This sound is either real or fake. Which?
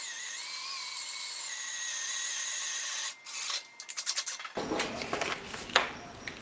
real